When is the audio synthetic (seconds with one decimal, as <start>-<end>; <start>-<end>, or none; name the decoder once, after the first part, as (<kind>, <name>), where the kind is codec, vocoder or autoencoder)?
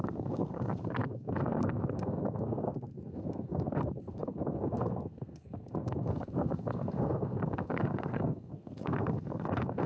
0.0-9.9 (codec, SNAC)